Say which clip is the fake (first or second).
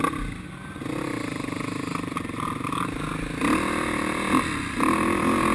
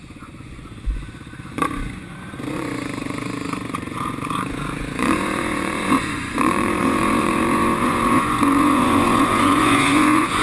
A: second